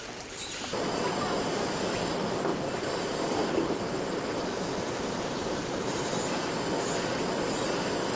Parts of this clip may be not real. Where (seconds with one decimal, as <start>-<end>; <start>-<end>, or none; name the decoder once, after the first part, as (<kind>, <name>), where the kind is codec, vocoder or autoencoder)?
none